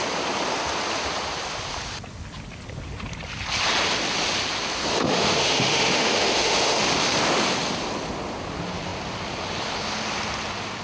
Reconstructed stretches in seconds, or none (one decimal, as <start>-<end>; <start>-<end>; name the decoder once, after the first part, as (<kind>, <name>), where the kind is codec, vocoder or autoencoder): 4.9-6.8 (autoencoder, DAC-VAE)